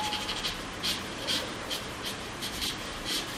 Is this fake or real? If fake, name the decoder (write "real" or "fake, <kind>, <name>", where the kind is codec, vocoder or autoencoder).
fake, vocoder, BigVGAN v2